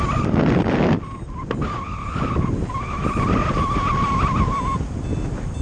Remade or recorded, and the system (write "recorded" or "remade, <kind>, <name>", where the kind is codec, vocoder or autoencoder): recorded